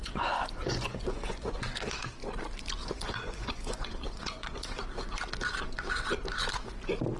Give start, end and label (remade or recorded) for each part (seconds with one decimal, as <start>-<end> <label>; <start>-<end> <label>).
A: 0.0-1.6 remade; 1.6-2.8 recorded; 2.8-4.8 remade; 4.8-7.2 recorded